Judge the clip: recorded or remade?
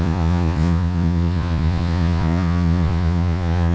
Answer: remade